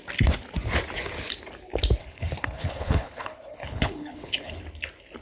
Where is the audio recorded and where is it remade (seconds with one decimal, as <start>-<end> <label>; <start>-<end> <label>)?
0.0-2.0 recorded; 2.0-4.6 remade; 4.6-5.2 recorded